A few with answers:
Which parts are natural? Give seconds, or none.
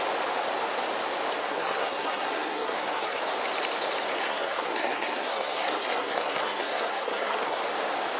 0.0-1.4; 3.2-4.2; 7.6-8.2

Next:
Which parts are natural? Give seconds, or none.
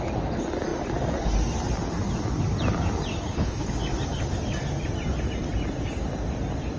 0.0-3.1; 3.7-6.8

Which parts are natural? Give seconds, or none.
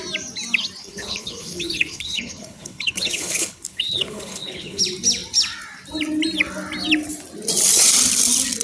0.0-0.8; 4.8-8.6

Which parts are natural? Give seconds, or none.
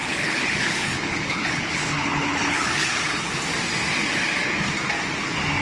3.4-5.6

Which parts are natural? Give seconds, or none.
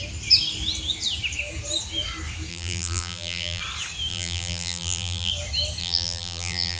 0.0-2.5; 3.6-4.1; 5.3-5.8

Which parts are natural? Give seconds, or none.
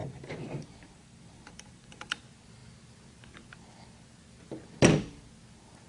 2.2-5.9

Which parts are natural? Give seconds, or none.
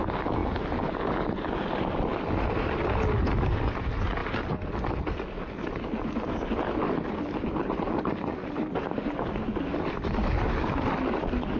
0.0-11.6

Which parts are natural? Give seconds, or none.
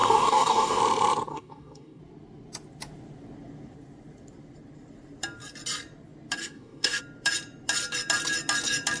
0.8-1.3; 2.0-6.4; 7.0-9.0